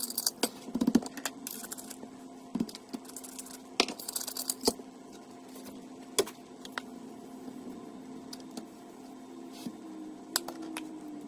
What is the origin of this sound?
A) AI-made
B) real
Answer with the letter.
B